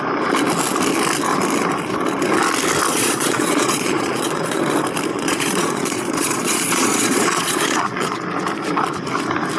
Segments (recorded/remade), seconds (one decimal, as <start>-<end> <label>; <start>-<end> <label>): 0.0-2.9 recorded; 2.9-4.6 remade; 4.6-5.1 recorded; 5.1-8.2 remade; 8.2-9.6 recorded

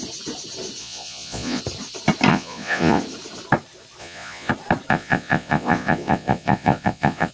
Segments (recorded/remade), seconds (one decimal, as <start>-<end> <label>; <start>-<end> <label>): 0.0-0.8 recorded; 0.8-1.6 remade; 1.6-2.3 recorded; 2.3-3.0 remade; 3.0-4.0 recorded; 4.0-4.5 remade; 4.5-4.9 recorded; 4.9-7.3 remade